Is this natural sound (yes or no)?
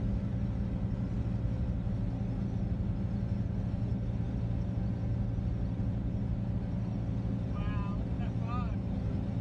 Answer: yes